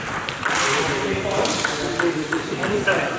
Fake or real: real